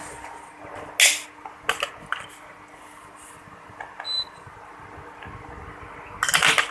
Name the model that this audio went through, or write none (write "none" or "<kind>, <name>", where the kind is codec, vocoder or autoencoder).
none